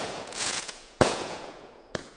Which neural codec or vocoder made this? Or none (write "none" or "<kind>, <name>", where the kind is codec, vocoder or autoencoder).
vocoder, Vocos